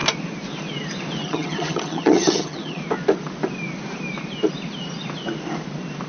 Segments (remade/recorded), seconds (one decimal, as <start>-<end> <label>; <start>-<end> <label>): 0.0-1.2 recorded; 1.2-2.8 remade; 2.8-6.1 recorded